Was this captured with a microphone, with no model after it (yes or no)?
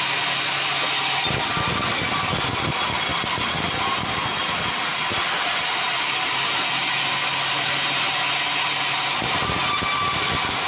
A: yes